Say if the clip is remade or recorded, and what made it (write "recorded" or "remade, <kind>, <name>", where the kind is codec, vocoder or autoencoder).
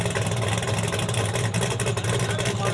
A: recorded